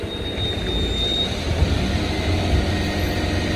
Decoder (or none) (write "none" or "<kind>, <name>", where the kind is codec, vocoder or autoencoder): none